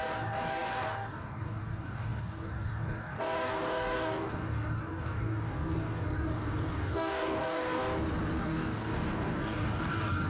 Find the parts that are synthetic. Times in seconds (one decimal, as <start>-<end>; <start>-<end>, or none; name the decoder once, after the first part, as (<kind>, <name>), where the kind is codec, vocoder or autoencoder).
0.0-7.8 (codec, DAC); 8.4-10.3